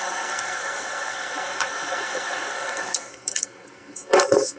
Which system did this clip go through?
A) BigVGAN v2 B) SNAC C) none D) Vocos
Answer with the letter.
B